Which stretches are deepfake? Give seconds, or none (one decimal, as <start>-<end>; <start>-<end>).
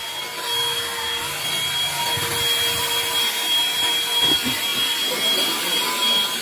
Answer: none